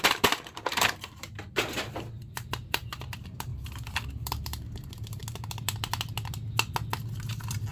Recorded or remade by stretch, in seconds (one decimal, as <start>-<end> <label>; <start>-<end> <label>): 0.0-3.5 remade; 3.5-4.1 recorded; 4.1-5.2 remade; 5.2-7.7 recorded